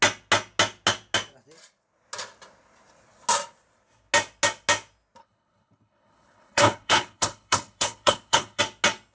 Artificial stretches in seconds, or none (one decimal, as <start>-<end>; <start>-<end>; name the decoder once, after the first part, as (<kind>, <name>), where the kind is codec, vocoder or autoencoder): 5.2-8.6 (codec, HILCodec)